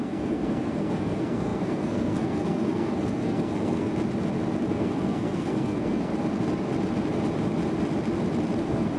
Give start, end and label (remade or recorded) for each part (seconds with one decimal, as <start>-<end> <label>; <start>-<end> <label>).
0.0-3.9 remade; 3.9-4.7 recorded; 4.7-6.1 remade; 6.1-8.6 recorded; 8.6-9.0 remade